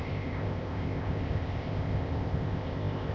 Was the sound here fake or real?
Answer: fake